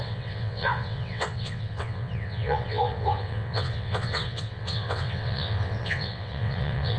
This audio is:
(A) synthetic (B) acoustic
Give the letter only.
A